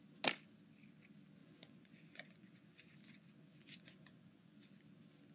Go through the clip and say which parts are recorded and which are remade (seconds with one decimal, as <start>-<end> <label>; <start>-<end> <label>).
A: 0.0-1.4 recorded; 1.4-4.6 remade; 4.6-5.3 recorded